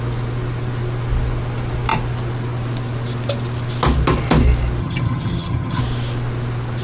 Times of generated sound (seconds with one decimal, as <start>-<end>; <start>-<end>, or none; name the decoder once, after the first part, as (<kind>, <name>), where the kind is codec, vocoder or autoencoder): 4.8-5.8 (vocoder, HiFi-GAN)